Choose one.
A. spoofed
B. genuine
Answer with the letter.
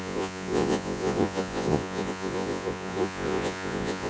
A